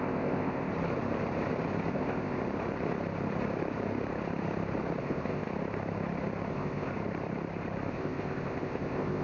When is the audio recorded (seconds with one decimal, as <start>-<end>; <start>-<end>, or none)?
0.7-1.9; 2.4-5.0; 5.5-6.5; 6.9-7.9